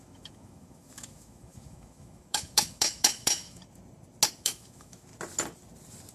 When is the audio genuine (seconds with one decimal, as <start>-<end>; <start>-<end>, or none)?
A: 3.6-4.4; 5.1-6.1